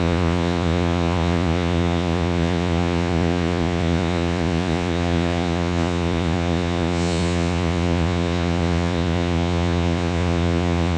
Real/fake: fake